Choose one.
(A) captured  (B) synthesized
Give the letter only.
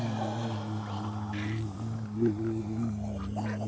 A